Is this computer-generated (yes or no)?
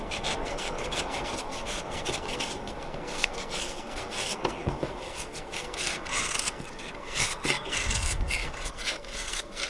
yes